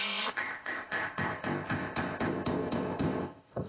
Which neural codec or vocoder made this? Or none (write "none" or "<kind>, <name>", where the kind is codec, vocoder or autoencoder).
codec, ZipCodec